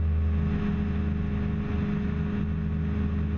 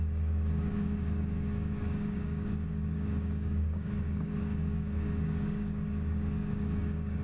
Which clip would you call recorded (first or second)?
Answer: first